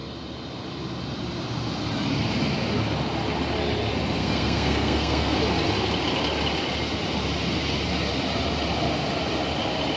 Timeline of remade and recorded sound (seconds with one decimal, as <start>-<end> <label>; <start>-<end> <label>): 0.0-4.2 recorded; 4.2-5.4 remade; 5.4-10.0 recorded